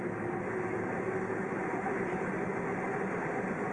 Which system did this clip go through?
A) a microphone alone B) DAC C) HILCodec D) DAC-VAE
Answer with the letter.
A